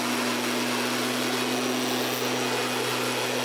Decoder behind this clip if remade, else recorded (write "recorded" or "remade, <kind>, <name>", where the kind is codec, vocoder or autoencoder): recorded